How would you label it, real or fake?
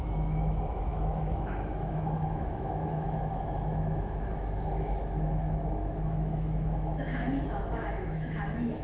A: fake